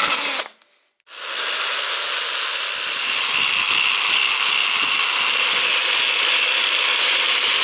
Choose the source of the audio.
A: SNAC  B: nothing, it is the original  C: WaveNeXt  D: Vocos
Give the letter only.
B